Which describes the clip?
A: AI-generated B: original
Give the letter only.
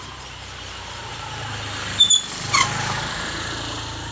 B